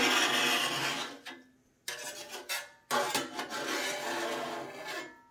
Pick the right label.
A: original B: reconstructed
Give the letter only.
A